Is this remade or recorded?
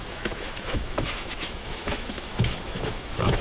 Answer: remade